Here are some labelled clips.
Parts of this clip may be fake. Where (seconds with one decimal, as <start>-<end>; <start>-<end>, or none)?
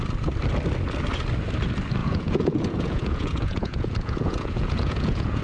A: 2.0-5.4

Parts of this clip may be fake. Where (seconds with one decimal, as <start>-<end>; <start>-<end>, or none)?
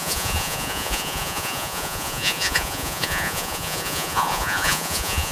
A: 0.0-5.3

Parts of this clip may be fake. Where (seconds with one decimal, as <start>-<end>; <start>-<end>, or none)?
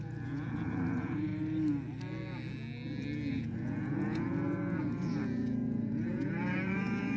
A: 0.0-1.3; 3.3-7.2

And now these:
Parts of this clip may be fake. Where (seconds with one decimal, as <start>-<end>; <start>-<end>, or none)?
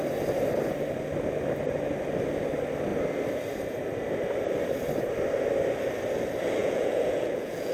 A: 6.6-7.7